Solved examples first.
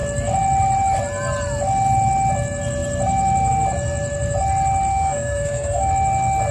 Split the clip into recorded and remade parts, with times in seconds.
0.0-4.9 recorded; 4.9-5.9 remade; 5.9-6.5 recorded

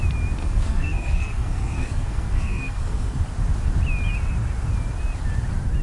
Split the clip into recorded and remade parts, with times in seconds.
0.0-0.4 recorded; 0.4-3.2 remade; 3.2-5.8 recorded

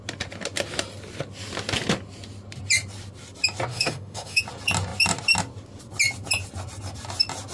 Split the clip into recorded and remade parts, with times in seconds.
0.0-3.7 recorded; 3.7-4.4 remade; 4.4-7.5 recorded

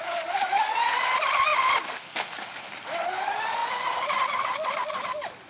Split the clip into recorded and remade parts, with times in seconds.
0.0-5.5 recorded

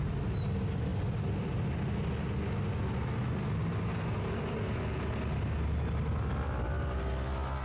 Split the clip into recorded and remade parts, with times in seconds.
0.0-7.6 recorded

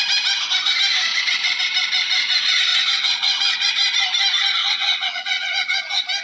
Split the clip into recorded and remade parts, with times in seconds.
0.0-1.1 recorded; 1.1-1.6 remade; 1.6-2.7 recorded; 2.7-3.7 remade; 3.7-4.6 recorded; 4.6-5.8 remade; 5.8-6.2 recorded

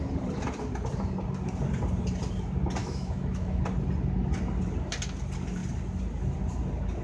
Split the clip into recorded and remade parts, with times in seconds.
0.0-2.8 recorded; 2.8-3.6 remade; 3.6-7.0 recorded

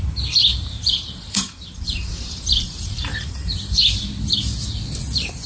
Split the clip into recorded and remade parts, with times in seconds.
0.0-0.5 recorded; 0.5-3.8 remade; 3.8-5.5 recorded